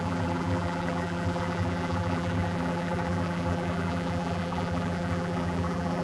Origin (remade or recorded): remade